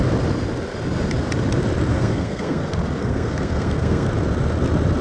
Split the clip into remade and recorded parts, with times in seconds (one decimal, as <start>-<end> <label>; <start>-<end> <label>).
0.0-1.9 recorded; 1.9-2.6 remade; 2.6-3.0 recorded; 3.0-4.1 remade; 4.1-5.0 recorded